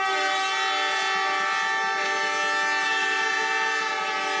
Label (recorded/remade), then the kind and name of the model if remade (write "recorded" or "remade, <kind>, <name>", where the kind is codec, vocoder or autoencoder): recorded